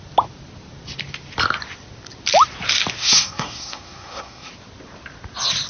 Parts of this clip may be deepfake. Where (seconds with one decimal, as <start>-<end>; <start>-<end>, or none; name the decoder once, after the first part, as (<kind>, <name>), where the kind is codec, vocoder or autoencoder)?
3.0-4.5 (codec, SNAC)